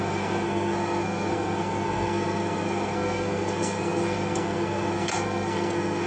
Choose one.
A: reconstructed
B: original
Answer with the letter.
A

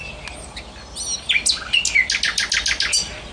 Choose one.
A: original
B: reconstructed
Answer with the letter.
A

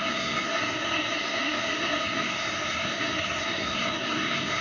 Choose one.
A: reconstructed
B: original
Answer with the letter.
A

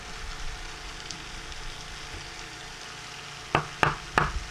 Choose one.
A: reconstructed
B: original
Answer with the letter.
B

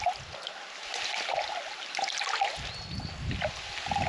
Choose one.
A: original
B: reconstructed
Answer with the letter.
A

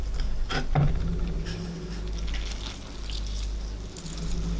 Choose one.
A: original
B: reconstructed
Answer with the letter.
A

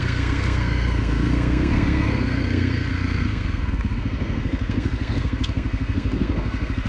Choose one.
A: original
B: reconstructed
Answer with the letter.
B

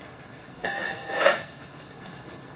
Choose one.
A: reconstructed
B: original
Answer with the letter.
A